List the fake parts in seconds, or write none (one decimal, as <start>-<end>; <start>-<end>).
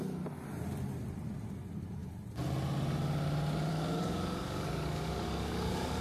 3.7-6.0